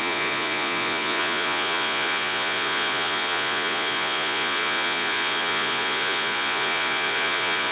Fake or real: fake